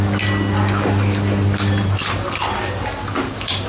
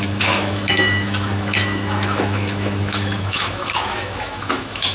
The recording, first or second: first